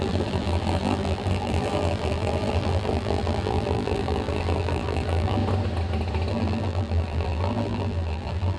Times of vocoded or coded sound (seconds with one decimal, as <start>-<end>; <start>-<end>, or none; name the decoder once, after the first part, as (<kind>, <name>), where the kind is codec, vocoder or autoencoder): 0.0-5.4 (vocoder, BigVGAN v2); 6.3-8.6